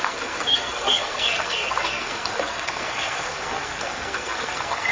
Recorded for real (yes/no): no